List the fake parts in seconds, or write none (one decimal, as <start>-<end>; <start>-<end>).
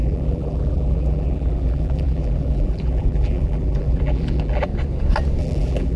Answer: 0.0-4.7; 5.4-6.0